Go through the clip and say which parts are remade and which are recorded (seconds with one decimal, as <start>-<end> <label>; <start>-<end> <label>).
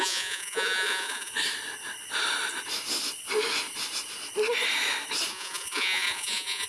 0.0-1.3 remade; 1.3-5.3 recorded; 5.3-6.7 remade